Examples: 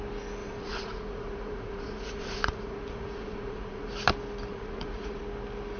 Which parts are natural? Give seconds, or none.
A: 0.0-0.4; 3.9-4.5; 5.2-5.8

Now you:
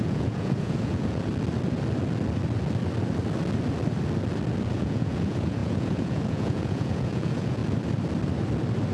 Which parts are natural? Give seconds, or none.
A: 1.3-4.7; 7.6-8.9

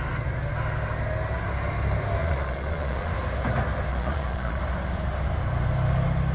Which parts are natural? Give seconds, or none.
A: 0.0-2.2; 3.1-3.9; 4.6-6.3

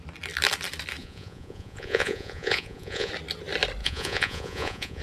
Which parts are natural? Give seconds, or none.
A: 0.0-1.0; 3.1-3.8